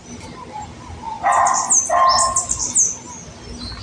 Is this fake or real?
real